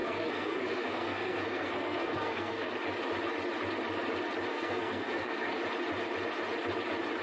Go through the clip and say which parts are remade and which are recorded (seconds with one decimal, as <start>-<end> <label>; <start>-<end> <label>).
0.0-2.7 remade; 2.7-4.5 recorded; 4.5-5.6 remade; 5.6-7.2 recorded